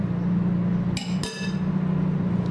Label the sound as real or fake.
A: real